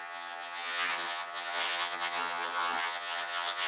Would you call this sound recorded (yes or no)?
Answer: no